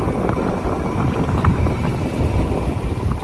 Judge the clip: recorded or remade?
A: recorded